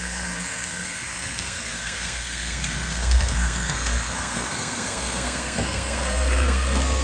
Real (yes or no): no